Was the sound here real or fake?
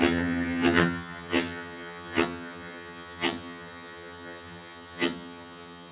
fake